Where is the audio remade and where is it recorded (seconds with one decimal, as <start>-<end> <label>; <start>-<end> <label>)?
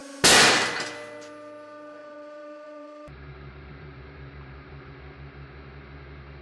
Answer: 0.0-2.0 recorded; 2.0-4.9 remade; 4.9-6.4 recorded